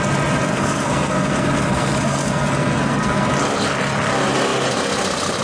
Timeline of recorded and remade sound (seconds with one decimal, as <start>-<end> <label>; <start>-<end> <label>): 0.0-0.5 recorded; 0.5-3.3 remade; 3.3-5.4 recorded

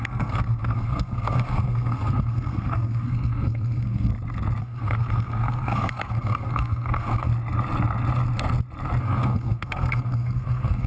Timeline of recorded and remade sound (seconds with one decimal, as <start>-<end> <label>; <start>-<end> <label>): 0.0-4.1 remade; 4.1-4.6 recorded; 4.6-7.3 remade; 7.3-9.0 recorded; 9.0-10.9 remade

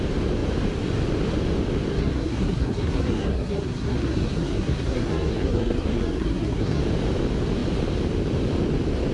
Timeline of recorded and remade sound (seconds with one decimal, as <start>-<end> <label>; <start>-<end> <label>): 0.0-1.9 recorded; 1.9-6.8 remade; 6.8-9.1 recorded

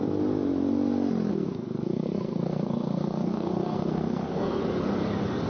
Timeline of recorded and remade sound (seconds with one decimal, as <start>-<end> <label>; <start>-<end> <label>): 0.0-1.3 recorded; 1.3-4.6 remade; 4.6-5.5 recorded

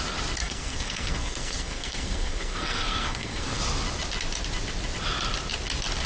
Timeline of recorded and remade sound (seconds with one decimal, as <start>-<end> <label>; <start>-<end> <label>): 0.0-0.4 recorded; 0.4-3.6 remade; 3.6-6.1 recorded